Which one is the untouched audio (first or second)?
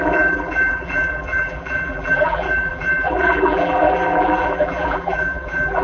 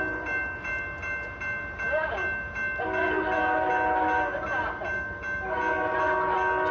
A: second